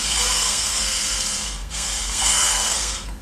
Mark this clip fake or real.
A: fake